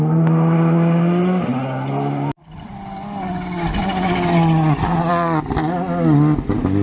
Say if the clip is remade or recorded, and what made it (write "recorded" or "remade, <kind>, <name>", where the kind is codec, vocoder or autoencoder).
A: recorded